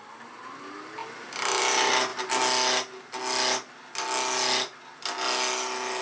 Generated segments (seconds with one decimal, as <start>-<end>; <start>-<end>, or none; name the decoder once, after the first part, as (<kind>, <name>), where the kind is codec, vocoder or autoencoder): none